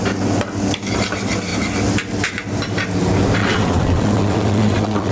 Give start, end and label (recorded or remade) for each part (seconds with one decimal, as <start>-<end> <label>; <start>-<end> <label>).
0.0-3.4 recorded; 3.4-5.1 remade

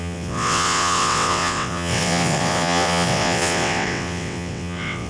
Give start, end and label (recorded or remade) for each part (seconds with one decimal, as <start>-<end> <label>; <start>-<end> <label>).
0.0-5.1 remade

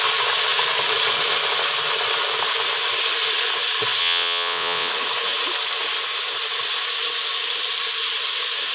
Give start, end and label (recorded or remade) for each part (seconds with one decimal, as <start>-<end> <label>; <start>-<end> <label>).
0.0-4.0 recorded; 4.0-4.9 remade; 4.9-8.7 recorded